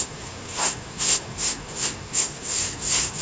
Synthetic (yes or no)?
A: yes